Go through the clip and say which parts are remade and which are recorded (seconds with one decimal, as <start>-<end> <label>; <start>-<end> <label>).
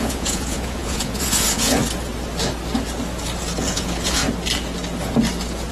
0.0-1.8 remade; 1.8-3.7 recorded; 3.7-4.2 remade; 4.2-5.7 recorded